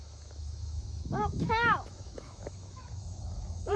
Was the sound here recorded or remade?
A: remade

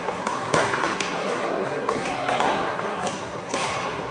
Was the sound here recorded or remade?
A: remade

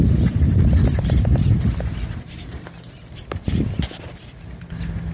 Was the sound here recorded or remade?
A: remade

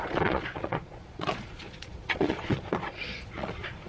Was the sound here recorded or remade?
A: remade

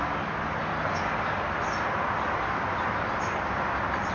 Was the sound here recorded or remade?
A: recorded